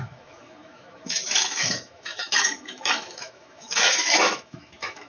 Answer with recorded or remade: remade